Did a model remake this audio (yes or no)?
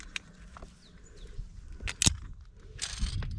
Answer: no